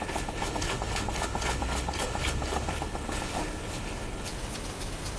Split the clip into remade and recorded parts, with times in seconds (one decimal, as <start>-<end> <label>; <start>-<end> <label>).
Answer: 0.0-4.3 remade; 4.3-5.2 recorded